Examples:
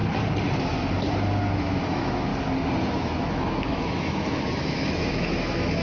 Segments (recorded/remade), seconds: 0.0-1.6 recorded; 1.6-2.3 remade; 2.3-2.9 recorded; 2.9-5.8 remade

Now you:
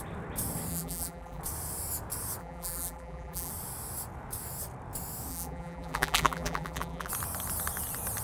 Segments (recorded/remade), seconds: 0.0-0.7 recorded; 0.7-1.4 remade; 1.4-2.4 recorded; 2.4-3.5 remade; 3.5-5.3 recorded; 5.3-7.1 remade; 7.1-8.2 recorded

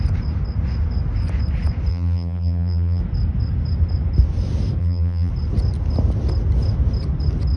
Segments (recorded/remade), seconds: 0.0-1.9 recorded; 1.9-3.0 remade; 3.0-4.8 recorded; 4.8-5.3 remade; 5.3-7.6 recorded

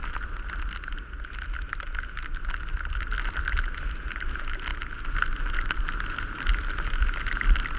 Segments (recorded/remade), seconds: 0.0-7.8 recorded

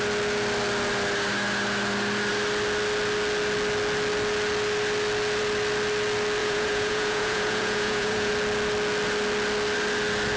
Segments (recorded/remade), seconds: 0.0-6.4 recorded; 6.4-8.3 remade; 8.3-10.4 recorded

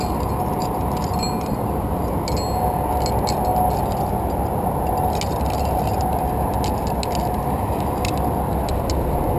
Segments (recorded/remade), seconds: 0.0-9.4 recorded

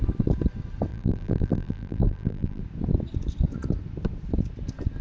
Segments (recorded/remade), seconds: 0.0-0.9 recorded; 0.9-2.6 remade; 2.6-5.0 recorded